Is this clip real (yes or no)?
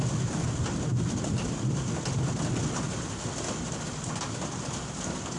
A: yes